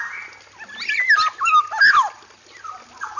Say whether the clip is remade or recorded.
recorded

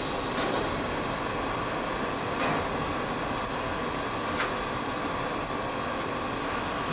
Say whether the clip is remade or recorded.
recorded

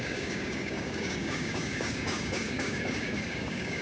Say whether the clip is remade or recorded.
remade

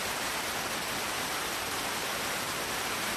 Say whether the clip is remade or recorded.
recorded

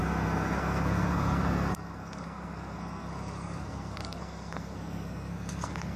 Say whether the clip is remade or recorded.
remade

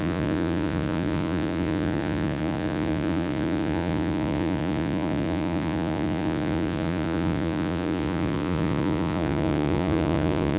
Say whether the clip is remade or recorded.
remade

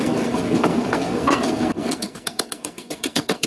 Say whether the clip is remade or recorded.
remade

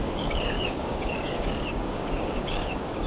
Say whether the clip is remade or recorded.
remade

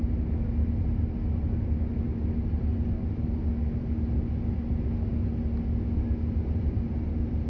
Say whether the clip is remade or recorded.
recorded